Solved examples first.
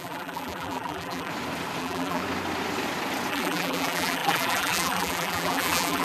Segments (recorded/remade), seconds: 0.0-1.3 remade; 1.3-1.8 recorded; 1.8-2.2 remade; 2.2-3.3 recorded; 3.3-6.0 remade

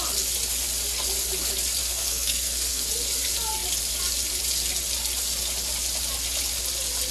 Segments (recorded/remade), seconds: 0.0-1.8 recorded; 1.8-2.9 remade; 2.9-7.1 recorded

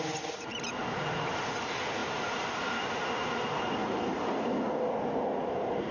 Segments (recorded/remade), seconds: 0.0-2.0 recorded; 2.0-3.1 remade; 3.1-5.9 recorded

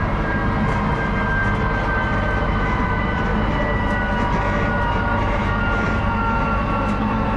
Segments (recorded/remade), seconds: 0.0-0.4 remade; 0.4-2.4 recorded; 2.4-3.3 remade; 3.3-5.0 recorded; 5.0-5.4 remade; 5.4-6.1 recorded; 6.1-7.4 remade

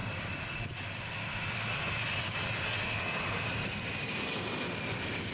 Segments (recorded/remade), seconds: 0.0-5.3 recorded